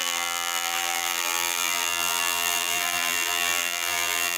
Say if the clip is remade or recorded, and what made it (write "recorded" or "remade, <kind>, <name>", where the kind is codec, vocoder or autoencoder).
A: remade, vocoder, BigVGAN v2